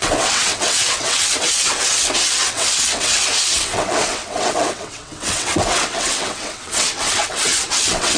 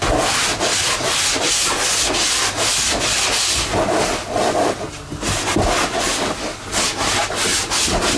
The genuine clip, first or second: second